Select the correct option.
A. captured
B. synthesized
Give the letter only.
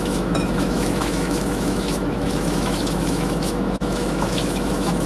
B